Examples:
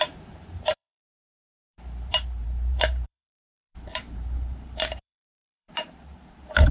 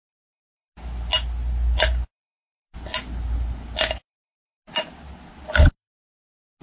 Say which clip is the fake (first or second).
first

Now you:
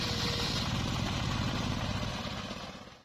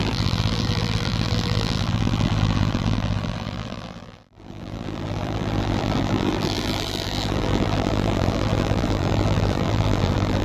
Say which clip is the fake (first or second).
second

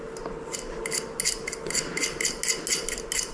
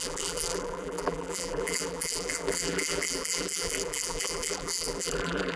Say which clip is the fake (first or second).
second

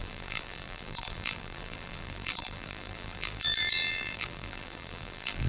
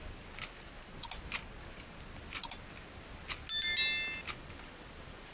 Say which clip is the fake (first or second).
first